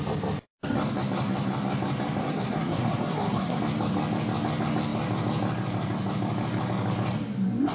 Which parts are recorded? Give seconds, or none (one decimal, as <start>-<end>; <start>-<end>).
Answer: 0.0-2.2; 3.6-7.7